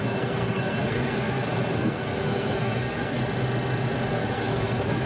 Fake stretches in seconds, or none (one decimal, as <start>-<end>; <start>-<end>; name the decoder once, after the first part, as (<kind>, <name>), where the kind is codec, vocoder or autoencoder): 0.0-3.2 (codec, SNAC); 4.1-5.1